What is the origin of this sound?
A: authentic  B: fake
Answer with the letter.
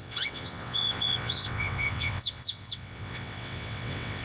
B